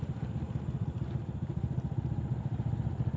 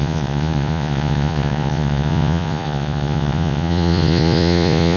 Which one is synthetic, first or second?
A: second